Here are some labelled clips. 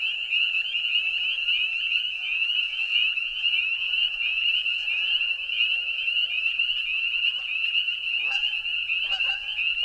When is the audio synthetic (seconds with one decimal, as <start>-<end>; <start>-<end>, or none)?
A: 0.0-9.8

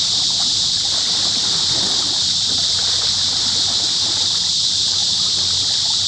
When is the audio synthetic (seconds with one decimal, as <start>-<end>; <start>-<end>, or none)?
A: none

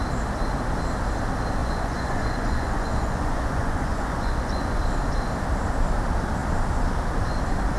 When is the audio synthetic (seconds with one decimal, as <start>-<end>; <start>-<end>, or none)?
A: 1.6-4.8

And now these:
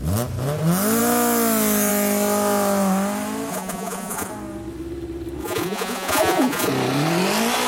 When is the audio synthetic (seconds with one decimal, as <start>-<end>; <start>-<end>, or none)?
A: 3.5-4.3; 5.4-6.7

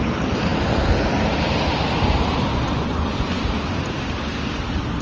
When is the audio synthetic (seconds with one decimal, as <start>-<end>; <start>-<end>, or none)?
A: 2.5-3.4

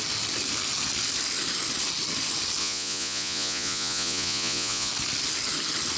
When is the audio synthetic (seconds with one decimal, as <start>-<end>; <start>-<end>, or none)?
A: 2.6-4.9

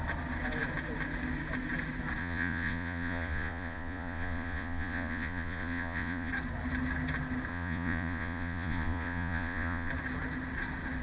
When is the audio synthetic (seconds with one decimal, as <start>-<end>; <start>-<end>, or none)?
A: 2.2-6.3; 7.5-9.9

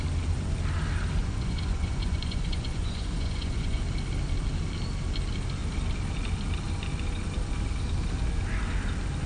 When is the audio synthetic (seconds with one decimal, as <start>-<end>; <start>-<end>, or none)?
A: 1.2-3.8